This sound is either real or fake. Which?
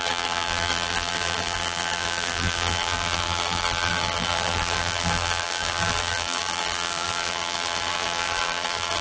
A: fake